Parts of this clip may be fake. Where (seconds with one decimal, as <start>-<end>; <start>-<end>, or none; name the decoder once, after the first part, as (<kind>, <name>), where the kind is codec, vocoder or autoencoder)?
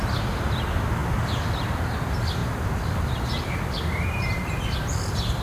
2.4-5.4 (vocoder, BigVGAN v2)